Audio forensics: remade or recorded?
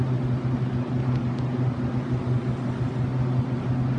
recorded